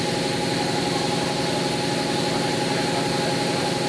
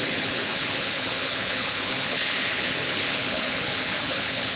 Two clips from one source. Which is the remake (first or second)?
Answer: second